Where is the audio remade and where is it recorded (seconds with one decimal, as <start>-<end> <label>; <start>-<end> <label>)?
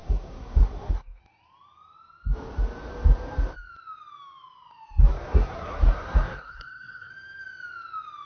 0.0-1.2 remade; 1.2-5.1 recorded; 5.1-7.1 remade; 7.1-8.3 recorded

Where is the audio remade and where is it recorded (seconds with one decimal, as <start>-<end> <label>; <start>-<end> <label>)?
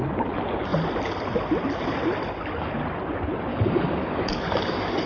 0.0-3.5 recorded; 3.5-5.1 remade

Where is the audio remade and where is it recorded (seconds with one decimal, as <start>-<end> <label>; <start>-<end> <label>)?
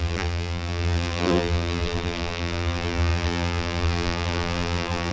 0.0-5.1 remade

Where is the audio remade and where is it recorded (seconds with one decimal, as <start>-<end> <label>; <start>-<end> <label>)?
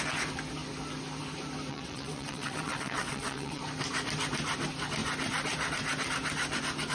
0.0-1.7 recorded; 1.7-3.6 remade; 3.6-6.9 recorded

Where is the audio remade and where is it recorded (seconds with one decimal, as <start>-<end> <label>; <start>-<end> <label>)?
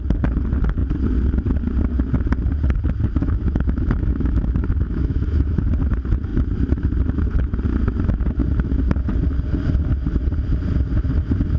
0.0-3.2 recorded; 3.2-5.6 remade; 5.6-11.6 recorded